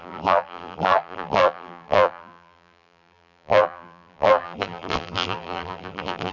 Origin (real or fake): fake